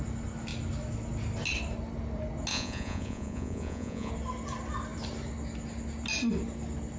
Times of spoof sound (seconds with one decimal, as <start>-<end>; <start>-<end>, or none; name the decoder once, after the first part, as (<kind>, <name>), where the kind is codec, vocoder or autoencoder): 2.5-4.1 (vocoder, Vocos)